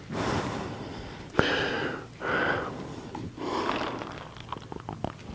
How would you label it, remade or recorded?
recorded